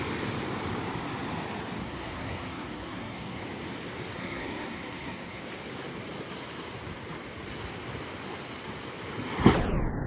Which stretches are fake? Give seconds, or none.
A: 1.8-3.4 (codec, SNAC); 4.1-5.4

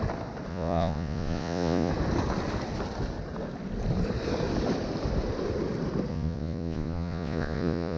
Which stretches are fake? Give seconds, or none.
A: 0.5-1.9 (vocoder, Vocos); 6.1-8.0

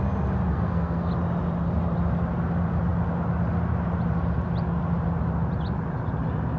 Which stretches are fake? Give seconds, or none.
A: 0.5-1.1 (codec, SNAC)

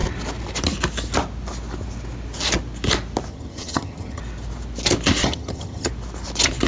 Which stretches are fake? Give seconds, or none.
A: 3.3-4.2 (vocoder, HiFi-GAN); 5.2-5.9

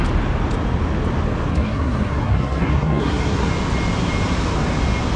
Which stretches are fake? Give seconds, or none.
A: 1.5-3.5 (codec, SNAC)

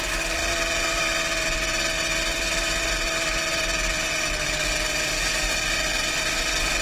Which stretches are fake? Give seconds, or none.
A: none